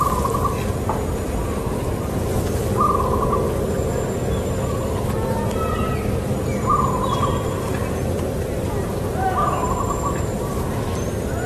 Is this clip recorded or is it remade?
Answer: recorded